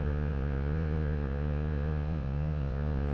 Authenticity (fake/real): fake